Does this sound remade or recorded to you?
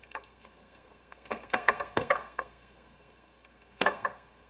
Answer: remade